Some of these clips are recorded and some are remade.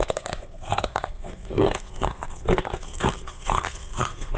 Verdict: remade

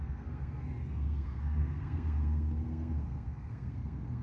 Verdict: remade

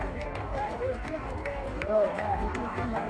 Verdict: remade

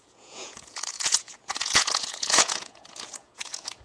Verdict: remade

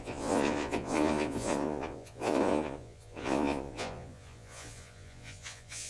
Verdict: remade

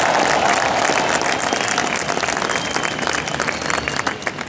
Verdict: recorded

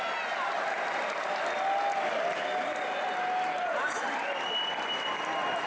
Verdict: recorded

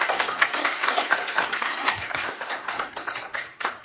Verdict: remade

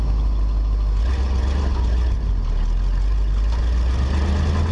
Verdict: recorded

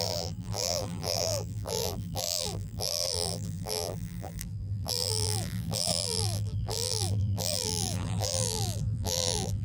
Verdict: remade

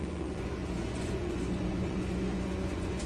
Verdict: remade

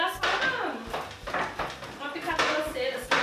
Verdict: recorded